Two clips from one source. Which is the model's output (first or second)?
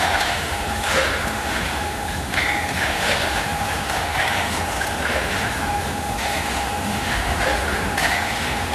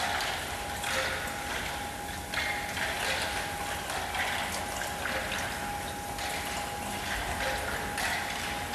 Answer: first